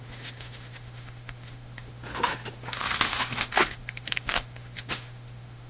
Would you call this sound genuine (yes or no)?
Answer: no